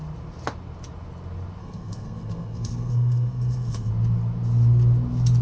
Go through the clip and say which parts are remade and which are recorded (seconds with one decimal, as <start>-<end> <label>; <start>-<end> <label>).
0.0-1.6 recorded; 1.6-3.9 remade; 3.9-5.4 recorded